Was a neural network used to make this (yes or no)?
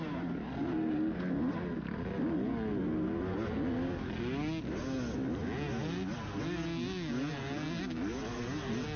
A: no